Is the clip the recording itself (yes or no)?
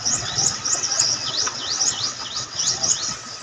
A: no